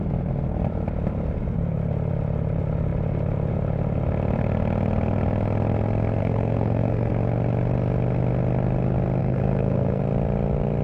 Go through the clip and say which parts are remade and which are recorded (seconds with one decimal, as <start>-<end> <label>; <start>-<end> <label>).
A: 0.0-6.2 recorded; 6.2-7.1 remade; 7.1-9.2 recorded; 9.2-10.0 remade; 10.0-10.8 recorded